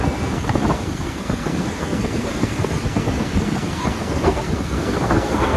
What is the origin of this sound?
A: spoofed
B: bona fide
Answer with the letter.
A